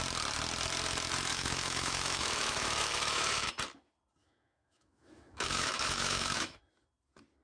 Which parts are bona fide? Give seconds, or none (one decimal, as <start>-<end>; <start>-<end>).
0.0-1.3; 3.5-4.2; 6.6-7.4